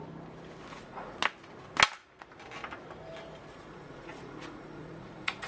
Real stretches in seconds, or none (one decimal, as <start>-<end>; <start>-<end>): 0.0-0.7; 1.2-3.5